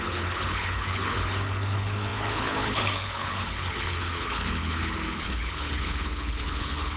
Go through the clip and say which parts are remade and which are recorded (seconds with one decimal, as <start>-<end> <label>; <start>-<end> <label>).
0.0-7.0 remade